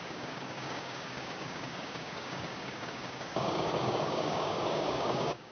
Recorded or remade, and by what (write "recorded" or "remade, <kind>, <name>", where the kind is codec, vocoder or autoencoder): remade, codec, DAC